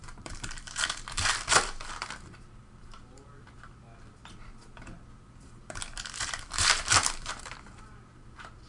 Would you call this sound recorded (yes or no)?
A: no